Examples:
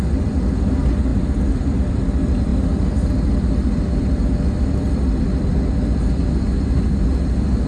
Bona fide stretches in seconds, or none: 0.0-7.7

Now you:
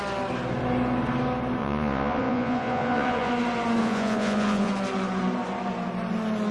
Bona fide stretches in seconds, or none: 0.0-1.6; 3.3-3.8; 4.7-6.5

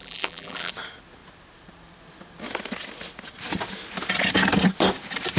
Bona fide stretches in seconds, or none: 0.7-5.4

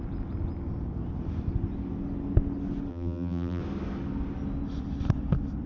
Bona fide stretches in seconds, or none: 0.0-2.9; 3.6-5.7

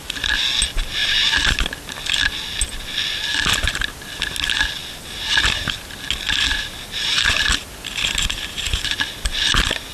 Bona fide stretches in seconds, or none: 0.0-9.9